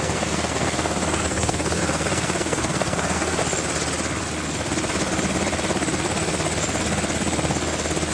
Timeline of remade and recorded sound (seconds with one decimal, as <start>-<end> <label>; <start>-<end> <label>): 0.0-3.4 remade; 3.4-8.1 recorded